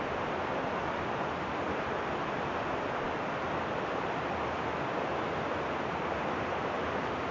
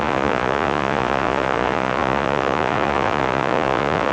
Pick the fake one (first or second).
second